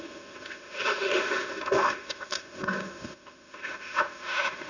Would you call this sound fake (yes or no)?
yes